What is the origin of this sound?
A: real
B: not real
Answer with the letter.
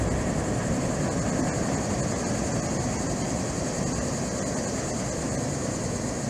A